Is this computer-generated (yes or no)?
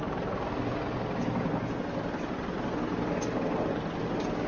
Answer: no